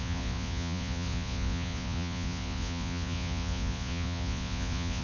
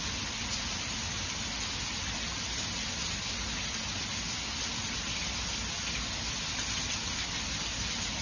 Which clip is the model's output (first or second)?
first